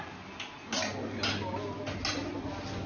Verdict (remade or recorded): recorded